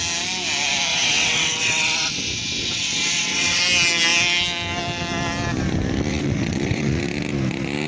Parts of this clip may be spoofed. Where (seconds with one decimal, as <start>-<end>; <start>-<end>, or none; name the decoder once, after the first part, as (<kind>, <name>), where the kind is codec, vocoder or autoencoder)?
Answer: 0.9-3.6 (vocoder, WaveNeXt); 6.1-7.0